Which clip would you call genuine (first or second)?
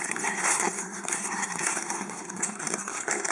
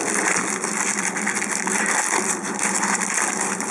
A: second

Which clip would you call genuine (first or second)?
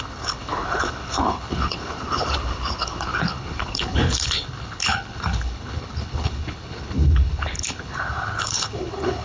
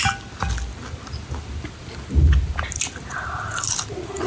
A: second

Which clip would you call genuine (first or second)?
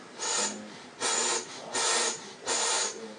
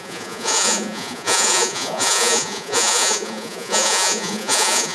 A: first